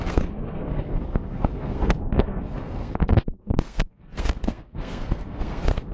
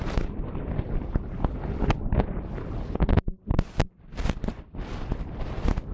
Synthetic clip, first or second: first